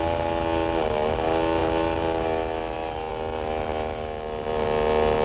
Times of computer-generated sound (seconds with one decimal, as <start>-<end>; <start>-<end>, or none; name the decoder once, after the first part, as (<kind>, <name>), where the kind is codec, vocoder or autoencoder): none